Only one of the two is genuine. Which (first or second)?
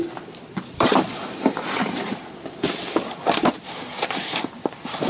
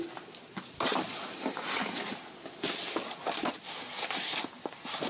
second